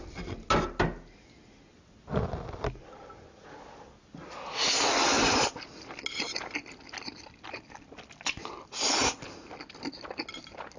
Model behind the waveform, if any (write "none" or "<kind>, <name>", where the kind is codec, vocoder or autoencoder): none